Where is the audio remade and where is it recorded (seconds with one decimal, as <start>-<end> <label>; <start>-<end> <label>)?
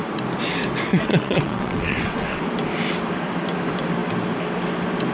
0.0-0.9 recorded; 0.9-2.4 remade; 2.4-5.1 recorded